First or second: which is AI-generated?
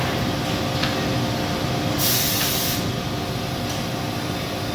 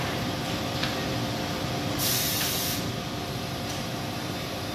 second